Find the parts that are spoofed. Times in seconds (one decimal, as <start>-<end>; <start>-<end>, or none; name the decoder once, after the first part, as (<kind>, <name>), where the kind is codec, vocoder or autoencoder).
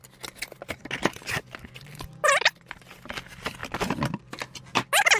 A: none